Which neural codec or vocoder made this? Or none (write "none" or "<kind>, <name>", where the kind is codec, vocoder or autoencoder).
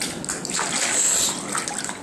none